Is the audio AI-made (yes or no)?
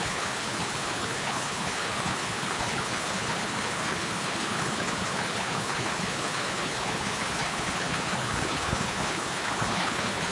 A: yes